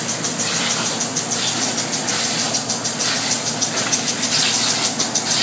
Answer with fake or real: real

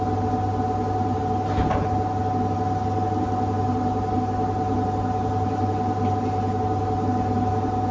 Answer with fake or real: real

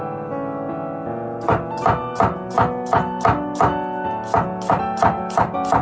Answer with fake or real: real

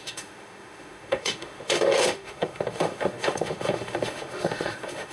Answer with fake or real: fake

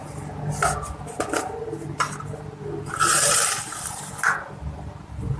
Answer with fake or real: real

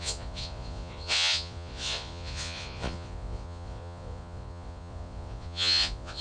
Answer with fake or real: fake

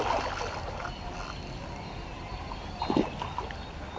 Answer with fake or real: real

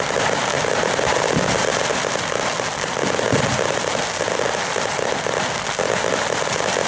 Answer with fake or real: real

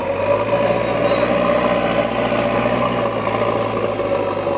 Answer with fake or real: real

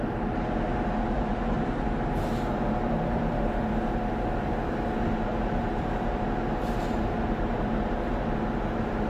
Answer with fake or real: fake